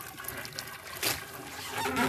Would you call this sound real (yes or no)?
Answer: yes